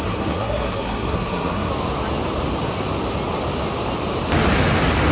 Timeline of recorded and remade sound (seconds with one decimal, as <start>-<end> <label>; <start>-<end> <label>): 0.0-1.7 remade; 1.7-5.1 recorded